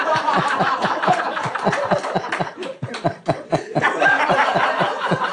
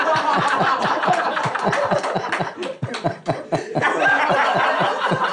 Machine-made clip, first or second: first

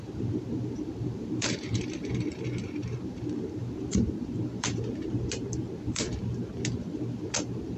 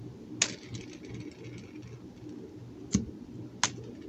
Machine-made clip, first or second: first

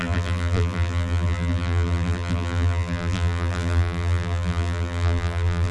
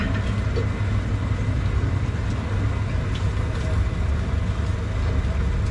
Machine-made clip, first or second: first